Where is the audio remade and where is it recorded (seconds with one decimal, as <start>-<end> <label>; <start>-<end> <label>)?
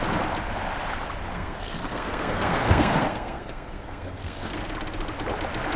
0.0-1.3 recorded; 1.3-4.6 remade; 4.6-5.8 recorded